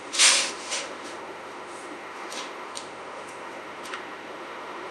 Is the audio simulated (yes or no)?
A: yes